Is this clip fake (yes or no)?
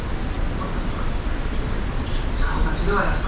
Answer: no